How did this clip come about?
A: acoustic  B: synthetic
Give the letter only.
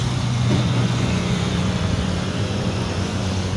B